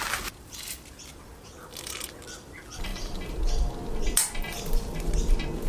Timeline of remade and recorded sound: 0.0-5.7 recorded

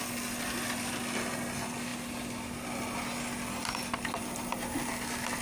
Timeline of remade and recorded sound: 0.0-5.4 recorded

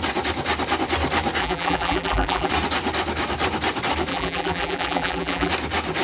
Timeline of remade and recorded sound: 0.0-1.4 recorded; 1.4-2.5 remade; 2.5-4.1 recorded; 4.1-5.5 remade; 5.5-6.0 recorded

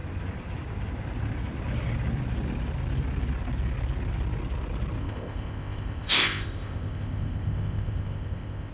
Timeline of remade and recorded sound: 0.0-5.0 recorded; 5.0-8.7 remade

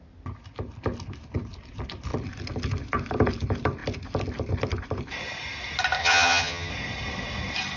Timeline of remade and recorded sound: 0.0-6.0 recorded; 6.0-6.7 remade; 6.7-7.8 recorded